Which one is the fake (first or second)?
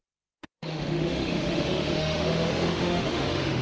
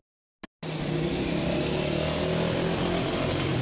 first